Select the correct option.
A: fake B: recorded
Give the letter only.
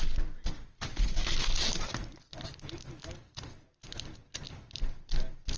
B